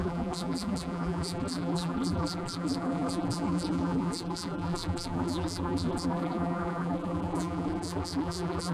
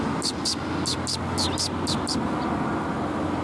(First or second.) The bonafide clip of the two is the second